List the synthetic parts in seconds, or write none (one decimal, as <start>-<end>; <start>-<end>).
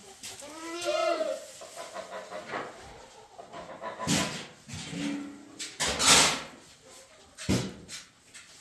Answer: none